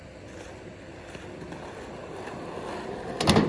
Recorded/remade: recorded